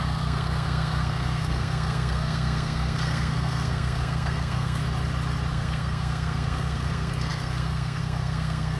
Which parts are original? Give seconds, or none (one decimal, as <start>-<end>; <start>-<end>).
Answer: 4.8-5.5